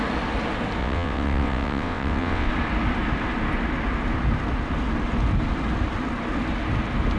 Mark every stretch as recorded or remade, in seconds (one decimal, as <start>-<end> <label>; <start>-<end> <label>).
0.0-0.8 recorded; 0.8-2.5 remade; 2.5-7.2 recorded